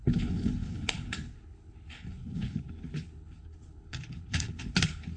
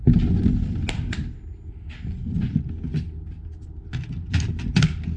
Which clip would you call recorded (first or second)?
second